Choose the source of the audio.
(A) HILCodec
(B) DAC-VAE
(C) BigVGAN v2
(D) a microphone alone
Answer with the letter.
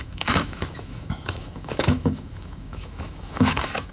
B